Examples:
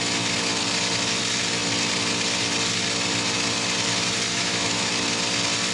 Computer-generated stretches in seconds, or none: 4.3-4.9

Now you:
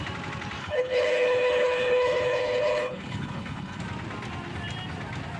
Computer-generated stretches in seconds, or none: 0.6-3.8